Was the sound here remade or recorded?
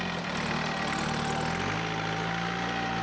recorded